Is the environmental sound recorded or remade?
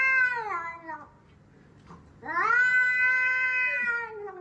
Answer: recorded